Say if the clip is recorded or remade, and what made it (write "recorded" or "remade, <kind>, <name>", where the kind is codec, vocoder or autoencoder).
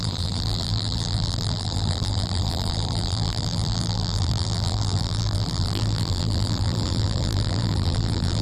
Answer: remade, vocoder, BigVGAN v2